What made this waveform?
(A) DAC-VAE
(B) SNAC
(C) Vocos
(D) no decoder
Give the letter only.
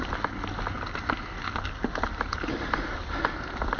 D